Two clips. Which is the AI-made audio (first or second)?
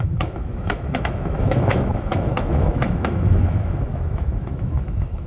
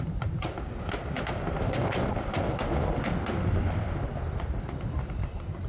first